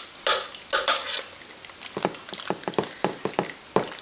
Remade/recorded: recorded